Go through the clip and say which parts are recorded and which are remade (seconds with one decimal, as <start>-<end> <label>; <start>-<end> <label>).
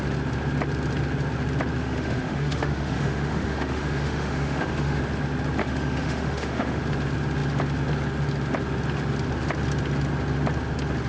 0.0-1.8 recorded; 1.8-5.0 remade; 5.0-5.6 recorded; 5.6-6.8 remade; 6.8-11.1 recorded